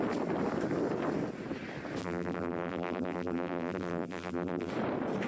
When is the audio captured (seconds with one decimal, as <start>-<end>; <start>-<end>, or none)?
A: 0.0-2.0; 4.7-5.3

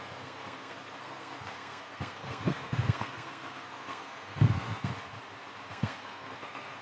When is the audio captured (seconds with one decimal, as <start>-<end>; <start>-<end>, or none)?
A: 4.9-5.7